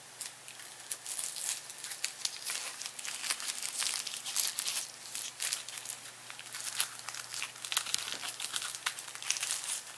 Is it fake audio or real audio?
real